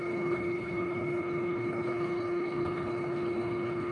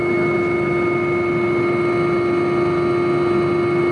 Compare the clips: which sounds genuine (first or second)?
second